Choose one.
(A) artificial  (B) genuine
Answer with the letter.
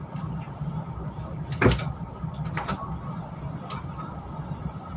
B